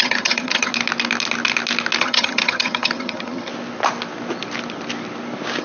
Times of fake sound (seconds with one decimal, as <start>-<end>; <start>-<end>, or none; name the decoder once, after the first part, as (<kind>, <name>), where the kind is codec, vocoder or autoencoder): 0.0-0.7 (vocoder, HiFi-GAN); 2.0-3.5